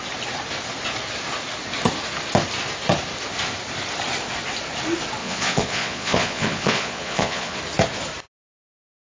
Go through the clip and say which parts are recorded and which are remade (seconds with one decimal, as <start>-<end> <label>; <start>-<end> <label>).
0.0-5.2 recorded; 5.2-7.6 remade; 7.6-9.2 recorded